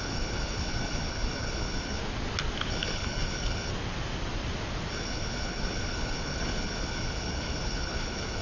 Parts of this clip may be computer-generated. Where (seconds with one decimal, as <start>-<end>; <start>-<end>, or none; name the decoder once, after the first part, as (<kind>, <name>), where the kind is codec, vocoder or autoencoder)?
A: 0.0-2.0 (codec, HILCodec); 2.7-3.7; 4.9-8.4